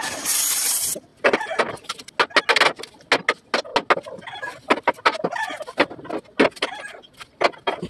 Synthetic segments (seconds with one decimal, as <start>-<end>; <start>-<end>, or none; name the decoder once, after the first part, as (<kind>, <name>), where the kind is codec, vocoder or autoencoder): none